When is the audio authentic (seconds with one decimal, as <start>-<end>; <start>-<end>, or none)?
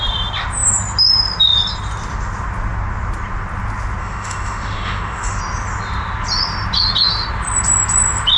0.0-4.0; 5.4-8.4